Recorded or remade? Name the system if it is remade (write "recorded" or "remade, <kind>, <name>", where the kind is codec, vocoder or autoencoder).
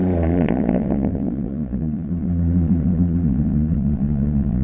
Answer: remade, vocoder, Vocos